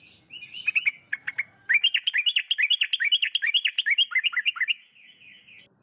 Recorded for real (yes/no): yes